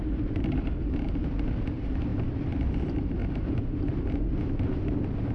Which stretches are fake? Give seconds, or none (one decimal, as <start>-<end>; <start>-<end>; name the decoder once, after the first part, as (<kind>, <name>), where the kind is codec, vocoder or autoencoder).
3.2-4.2 (vocoder, BigVGAN v2)